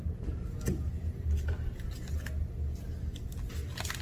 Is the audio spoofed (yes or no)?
no